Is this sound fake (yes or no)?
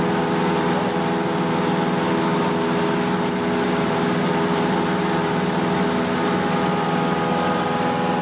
no